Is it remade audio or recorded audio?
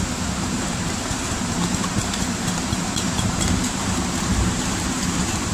remade